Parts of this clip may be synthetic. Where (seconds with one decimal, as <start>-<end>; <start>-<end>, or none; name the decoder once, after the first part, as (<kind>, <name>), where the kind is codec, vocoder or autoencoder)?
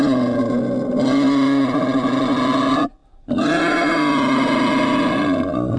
none